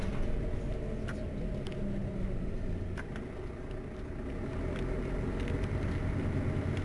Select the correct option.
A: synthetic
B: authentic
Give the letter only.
B